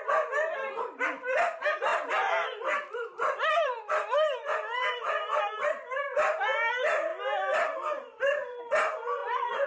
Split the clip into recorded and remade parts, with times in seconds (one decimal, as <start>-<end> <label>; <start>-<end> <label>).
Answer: 0.0-1.9 recorded; 1.9-5.4 remade; 5.4-7.1 recorded; 7.1-8.6 remade; 8.6-9.2 recorded; 9.2-9.7 remade